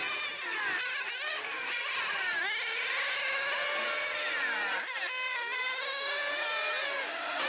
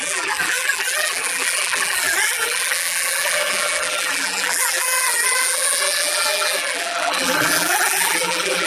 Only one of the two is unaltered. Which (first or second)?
first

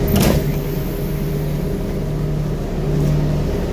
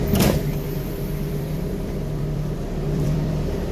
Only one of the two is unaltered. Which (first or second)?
first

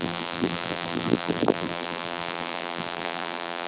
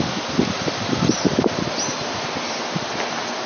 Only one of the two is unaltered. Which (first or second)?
second